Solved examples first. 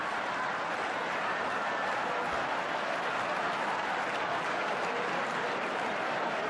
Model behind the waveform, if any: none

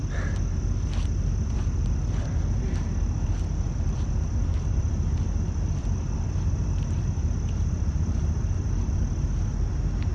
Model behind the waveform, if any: vocoder, BigVGAN v2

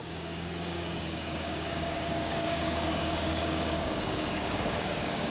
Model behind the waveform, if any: codec, DAC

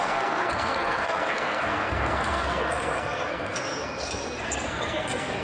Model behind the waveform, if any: codec, SNAC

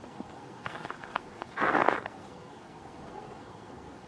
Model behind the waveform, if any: codec, SNAC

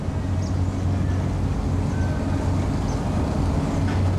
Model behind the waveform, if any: none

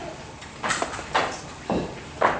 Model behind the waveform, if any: none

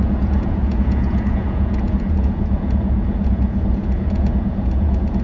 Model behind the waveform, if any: vocoder, Vocos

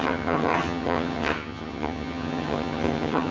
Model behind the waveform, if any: vocoder, HiFi-GAN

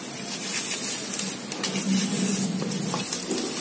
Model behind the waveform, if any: none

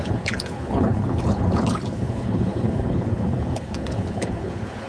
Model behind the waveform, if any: codec, HILCodec